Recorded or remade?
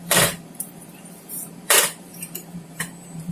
remade